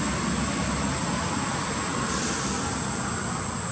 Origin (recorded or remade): recorded